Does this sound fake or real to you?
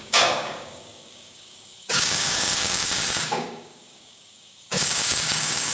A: fake